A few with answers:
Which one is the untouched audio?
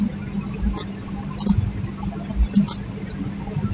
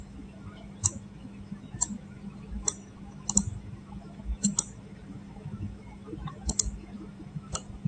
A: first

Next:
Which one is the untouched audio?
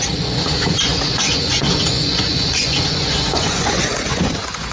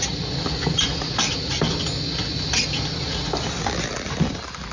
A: second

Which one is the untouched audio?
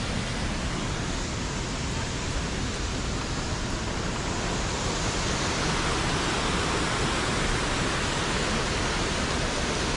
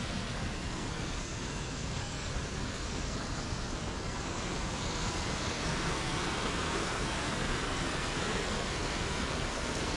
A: first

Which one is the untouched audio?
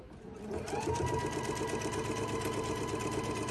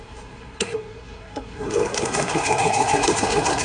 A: first